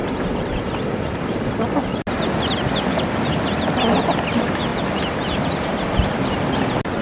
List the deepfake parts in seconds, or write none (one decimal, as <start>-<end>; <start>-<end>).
none